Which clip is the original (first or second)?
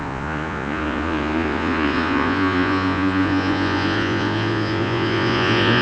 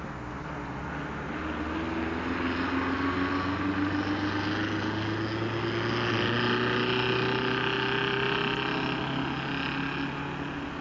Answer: second